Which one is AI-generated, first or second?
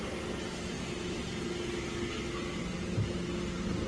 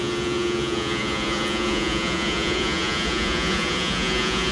second